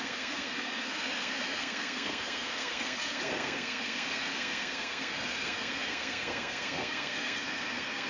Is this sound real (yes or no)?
no